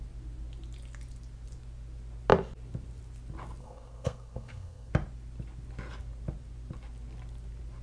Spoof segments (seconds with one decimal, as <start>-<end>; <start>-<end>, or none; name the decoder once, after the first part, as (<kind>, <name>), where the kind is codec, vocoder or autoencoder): 3.6-4.9 (codec, SNAC)